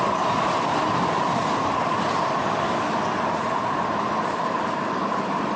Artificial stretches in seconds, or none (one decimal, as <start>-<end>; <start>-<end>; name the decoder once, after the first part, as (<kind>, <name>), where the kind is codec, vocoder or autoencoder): 4.2-5.6 (vocoder, BigVGAN v2)